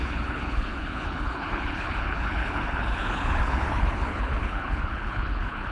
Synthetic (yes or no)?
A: yes